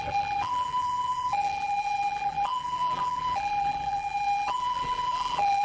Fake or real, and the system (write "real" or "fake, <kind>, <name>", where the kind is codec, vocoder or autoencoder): fake, vocoder, BigVGAN v2